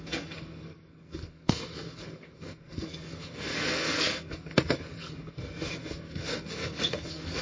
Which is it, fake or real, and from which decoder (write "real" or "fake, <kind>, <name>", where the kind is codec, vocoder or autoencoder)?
fake, codec, SNAC